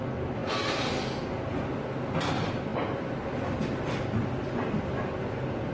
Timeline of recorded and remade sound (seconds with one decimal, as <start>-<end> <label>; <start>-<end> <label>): 0.0-5.7 recorded